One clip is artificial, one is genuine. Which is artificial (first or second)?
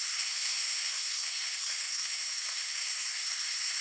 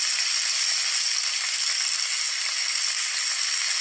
first